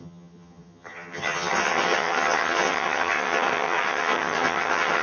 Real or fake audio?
fake